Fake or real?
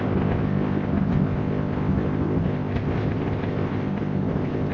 fake